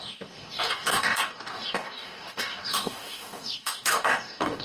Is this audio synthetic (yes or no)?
yes